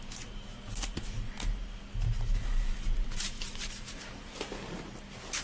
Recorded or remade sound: recorded